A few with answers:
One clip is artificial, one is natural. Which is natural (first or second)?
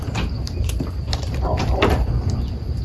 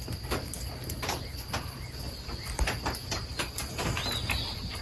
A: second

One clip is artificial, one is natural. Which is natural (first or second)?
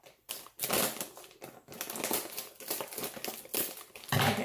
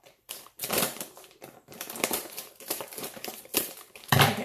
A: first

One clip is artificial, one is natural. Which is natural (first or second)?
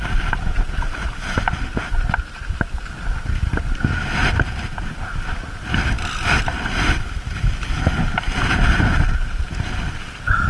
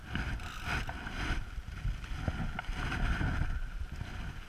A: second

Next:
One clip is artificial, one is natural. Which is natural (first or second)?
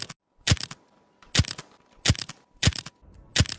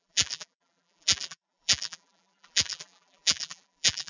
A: first